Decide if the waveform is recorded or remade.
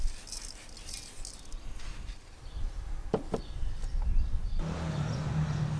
recorded